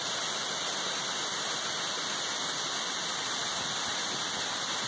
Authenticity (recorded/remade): recorded